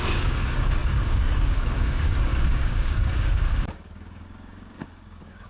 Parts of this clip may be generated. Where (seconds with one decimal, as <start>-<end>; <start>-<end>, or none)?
0.0-5.5